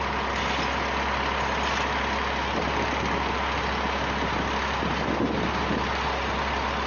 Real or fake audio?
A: real